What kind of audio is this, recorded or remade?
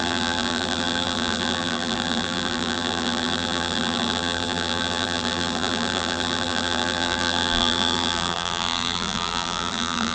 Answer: remade